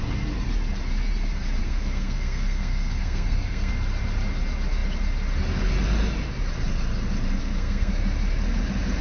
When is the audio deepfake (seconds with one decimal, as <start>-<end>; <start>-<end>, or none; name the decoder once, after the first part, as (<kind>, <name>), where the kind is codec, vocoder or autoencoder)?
1.6-3.7 (codec, SNAC); 7.4-7.9